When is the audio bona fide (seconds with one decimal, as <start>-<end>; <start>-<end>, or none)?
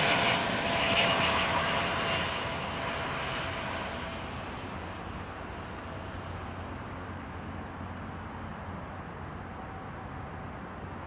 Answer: 0.0-0.4; 1.8-11.1